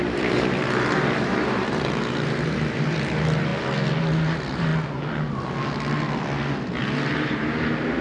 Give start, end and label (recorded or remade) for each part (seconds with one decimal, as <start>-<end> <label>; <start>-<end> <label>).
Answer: 0.0-3.5 remade; 3.5-4.0 recorded; 4.0-4.7 remade; 4.7-6.8 recorded; 6.8-8.0 remade